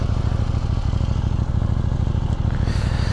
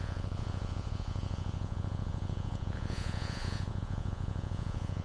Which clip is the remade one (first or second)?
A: second